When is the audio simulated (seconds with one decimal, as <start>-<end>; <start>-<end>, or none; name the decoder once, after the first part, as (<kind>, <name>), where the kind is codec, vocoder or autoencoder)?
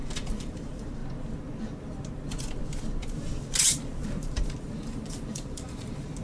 0.0-1.0 (vocoder, BigVGAN v2); 3.4-6.2